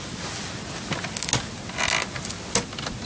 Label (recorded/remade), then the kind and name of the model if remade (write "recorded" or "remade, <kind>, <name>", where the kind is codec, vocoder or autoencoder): recorded